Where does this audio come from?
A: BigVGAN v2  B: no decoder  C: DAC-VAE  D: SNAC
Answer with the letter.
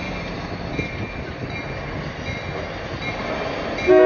B